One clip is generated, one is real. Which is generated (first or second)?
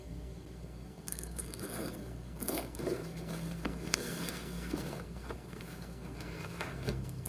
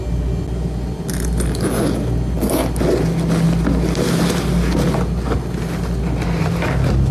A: first